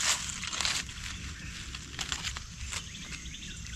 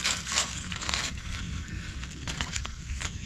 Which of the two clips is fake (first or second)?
second